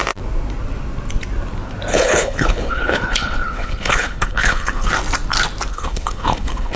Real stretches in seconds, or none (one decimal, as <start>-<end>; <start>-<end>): 0.0-1.9; 4.9-5.7